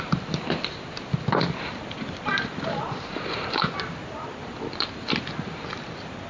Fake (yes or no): yes